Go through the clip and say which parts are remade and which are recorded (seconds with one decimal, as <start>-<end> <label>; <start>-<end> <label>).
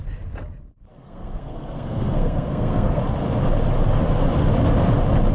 0.0-1.0 recorded; 1.0-3.0 remade; 3.0-5.3 recorded